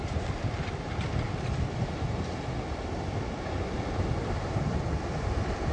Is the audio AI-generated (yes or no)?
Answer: no